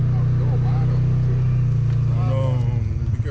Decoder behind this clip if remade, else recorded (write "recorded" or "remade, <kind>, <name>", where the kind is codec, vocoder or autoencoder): recorded